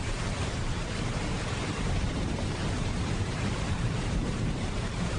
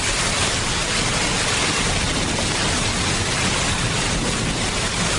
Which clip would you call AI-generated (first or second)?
first